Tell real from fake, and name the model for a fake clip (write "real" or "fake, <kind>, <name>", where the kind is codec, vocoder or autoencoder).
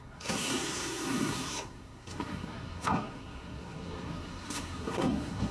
fake, codec, SNAC